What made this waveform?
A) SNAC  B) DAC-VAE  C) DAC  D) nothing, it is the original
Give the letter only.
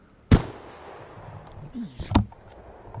D